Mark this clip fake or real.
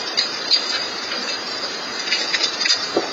fake